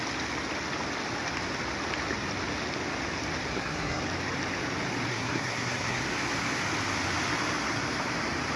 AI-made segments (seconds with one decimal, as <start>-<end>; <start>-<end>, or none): 3.5-4.0; 5.1-6.0